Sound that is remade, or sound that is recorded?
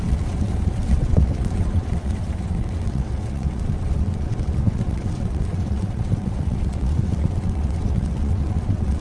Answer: remade